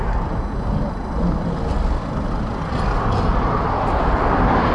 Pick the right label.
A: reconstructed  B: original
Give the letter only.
B